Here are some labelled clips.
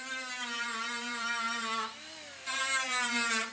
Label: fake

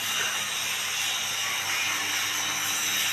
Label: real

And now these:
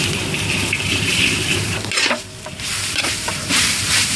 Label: fake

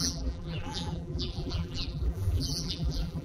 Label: fake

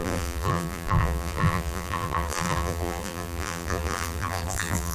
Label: fake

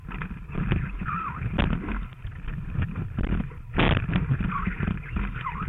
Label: real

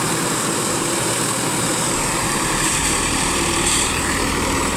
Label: fake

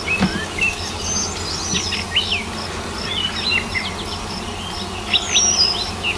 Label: real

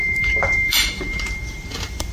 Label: fake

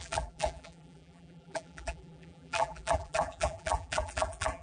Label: fake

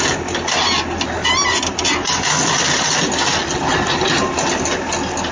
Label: real